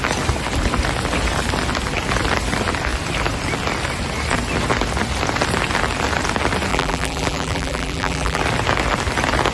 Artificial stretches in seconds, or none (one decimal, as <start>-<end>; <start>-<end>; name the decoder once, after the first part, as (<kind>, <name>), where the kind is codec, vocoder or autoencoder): 6.7-8.4 (vocoder, BigVGAN v2)